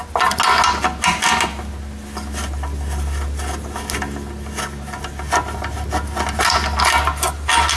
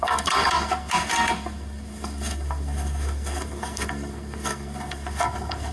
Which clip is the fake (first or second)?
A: second